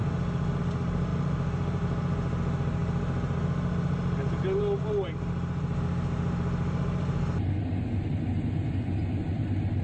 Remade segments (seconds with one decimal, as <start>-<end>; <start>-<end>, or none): 1.1-1.8